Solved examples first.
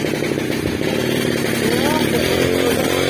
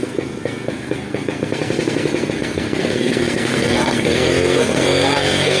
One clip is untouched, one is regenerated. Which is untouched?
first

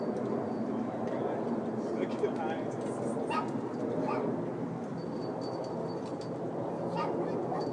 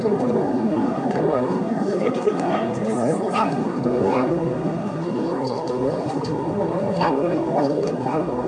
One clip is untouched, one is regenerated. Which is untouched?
first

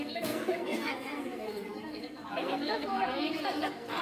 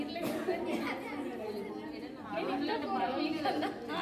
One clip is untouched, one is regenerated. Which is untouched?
second